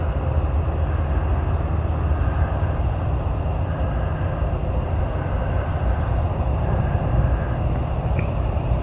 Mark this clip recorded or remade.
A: recorded